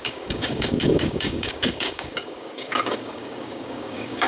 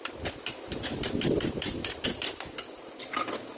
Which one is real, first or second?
second